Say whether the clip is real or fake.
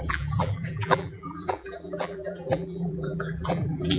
fake